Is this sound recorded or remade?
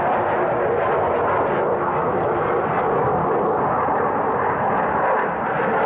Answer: recorded